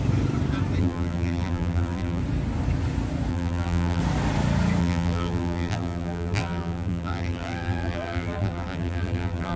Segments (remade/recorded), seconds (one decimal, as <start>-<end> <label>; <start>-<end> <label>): 0.0-0.8 recorded; 0.8-2.2 remade; 2.2-3.3 recorded; 3.3-4.0 remade; 4.0-4.8 recorded; 4.8-9.6 remade